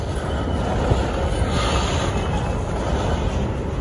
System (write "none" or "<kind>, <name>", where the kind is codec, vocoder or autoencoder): none